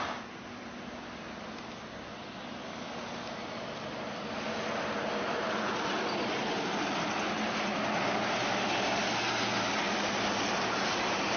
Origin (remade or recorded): recorded